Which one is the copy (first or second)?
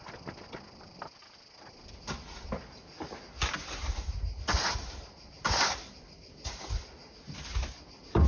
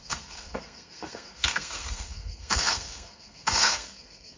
second